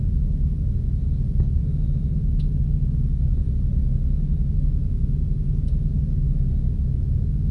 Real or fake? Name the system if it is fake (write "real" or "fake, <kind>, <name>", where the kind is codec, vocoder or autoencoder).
real